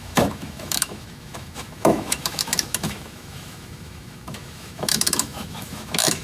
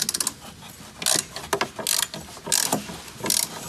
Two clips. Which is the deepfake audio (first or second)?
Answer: first